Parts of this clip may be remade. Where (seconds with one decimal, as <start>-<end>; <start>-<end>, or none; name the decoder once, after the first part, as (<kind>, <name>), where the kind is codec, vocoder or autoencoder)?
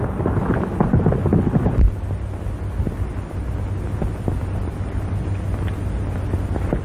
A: none